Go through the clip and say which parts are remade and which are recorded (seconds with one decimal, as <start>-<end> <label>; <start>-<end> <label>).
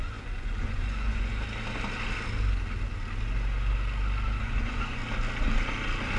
0.0-1.3 remade; 1.3-4.4 recorded; 4.4-5.0 remade; 5.0-6.2 recorded